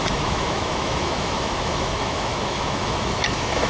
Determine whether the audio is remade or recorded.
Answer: remade